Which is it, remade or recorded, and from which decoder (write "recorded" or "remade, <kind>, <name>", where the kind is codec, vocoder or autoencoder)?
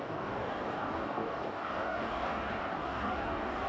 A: remade, codec, DAC